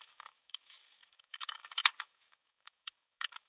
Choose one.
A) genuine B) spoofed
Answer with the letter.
B